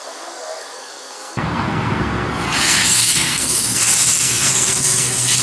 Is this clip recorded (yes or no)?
no